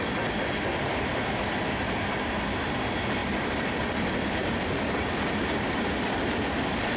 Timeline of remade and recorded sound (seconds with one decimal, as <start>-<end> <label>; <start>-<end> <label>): 0.0-3.2 recorded; 3.2-7.0 remade